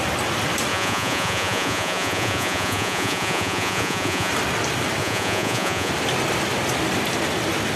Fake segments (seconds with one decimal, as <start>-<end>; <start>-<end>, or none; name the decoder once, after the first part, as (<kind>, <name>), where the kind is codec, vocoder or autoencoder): 0.7-4.3 (vocoder, Vocos); 5.0-5.9